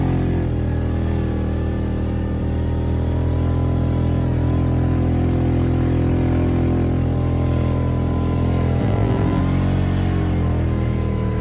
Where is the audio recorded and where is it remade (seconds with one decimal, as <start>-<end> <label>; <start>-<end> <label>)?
0.0-8.8 recorded; 8.8-9.4 remade; 9.4-11.4 recorded